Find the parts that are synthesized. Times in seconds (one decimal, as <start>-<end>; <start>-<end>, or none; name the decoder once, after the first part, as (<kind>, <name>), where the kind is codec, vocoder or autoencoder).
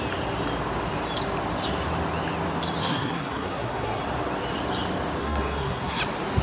2.8-4.0 (codec, SNAC); 5.2-6.0